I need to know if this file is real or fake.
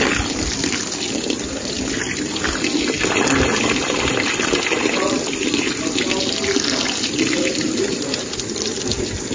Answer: real